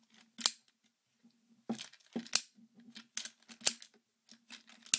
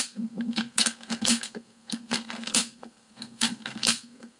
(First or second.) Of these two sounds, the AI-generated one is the second